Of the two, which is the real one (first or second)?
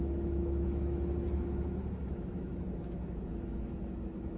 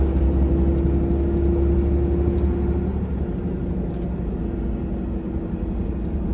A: second